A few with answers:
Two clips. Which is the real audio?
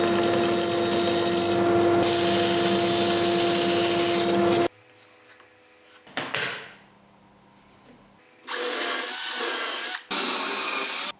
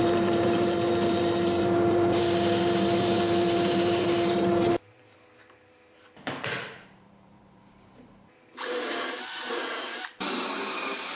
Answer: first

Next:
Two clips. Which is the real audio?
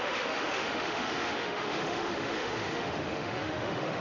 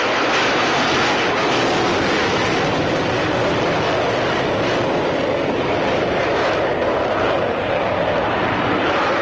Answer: second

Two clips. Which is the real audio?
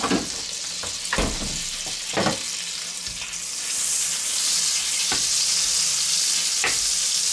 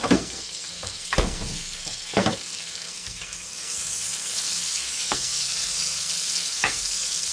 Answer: first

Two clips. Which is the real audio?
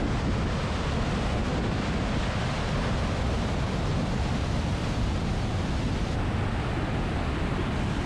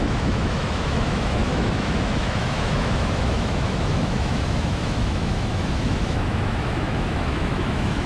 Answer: first